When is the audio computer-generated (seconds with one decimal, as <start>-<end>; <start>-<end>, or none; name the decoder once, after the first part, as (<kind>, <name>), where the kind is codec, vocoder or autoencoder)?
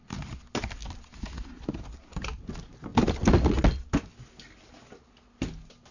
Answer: none